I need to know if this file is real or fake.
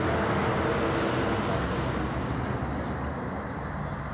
real